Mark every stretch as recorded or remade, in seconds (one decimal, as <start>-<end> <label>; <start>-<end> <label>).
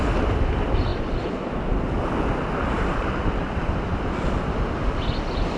0.0-5.6 recorded